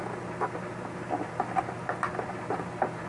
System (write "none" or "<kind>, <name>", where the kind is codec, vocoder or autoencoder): none